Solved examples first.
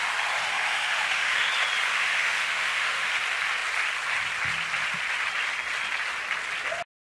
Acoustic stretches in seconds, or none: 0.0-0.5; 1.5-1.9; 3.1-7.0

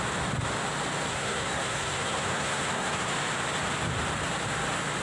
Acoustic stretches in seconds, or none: 0.0-1.1; 3.1-5.0

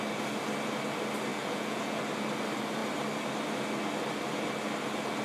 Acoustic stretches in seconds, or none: 0.0-1.3; 2.0-5.2

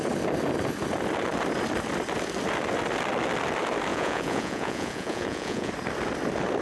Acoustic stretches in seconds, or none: 0.0-3.9; 5.7-6.6